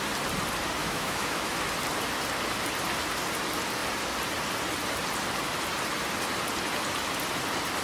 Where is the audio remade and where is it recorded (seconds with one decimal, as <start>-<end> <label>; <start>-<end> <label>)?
0.0-0.8 recorded; 0.8-1.6 remade; 1.6-7.8 recorded